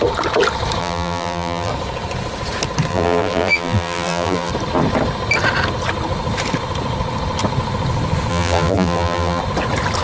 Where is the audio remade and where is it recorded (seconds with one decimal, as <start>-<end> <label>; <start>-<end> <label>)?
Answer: 0.0-0.8 recorded; 0.8-1.7 remade; 1.7-2.9 recorded; 2.9-4.5 remade; 4.5-8.3 recorded; 8.3-9.4 remade; 9.4-10.0 recorded